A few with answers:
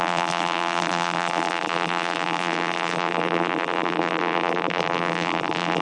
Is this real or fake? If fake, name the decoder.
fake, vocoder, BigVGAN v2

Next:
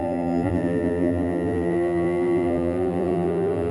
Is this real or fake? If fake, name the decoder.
fake, vocoder, BigVGAN v2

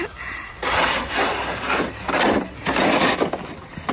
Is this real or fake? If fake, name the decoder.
real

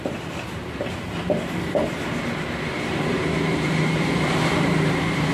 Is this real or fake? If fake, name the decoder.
fake, vocoder, BigVGAN v2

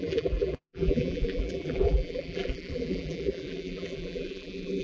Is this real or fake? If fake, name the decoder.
fake, vocoder, BigVGAN v2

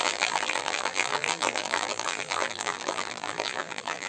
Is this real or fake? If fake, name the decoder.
fake, vocoder, BigVGAN v2